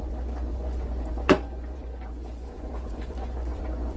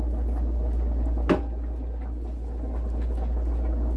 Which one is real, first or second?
second